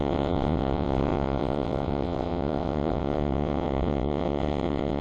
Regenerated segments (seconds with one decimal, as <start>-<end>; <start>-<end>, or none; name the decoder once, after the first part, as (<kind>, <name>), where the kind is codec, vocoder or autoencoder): 0.0-5.0 (vocoder, WaveNeXt)